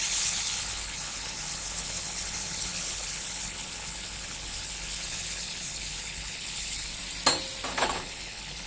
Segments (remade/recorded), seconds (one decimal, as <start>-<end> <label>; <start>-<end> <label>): 0.0-6.9 remade; 6.9-7.7 recorded; 7.7-8.7 remade